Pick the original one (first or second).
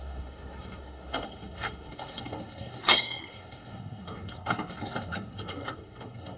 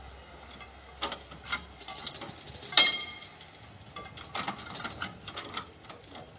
second